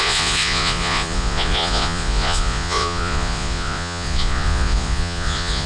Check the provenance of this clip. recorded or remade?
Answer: remade